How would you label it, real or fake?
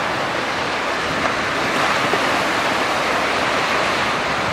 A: real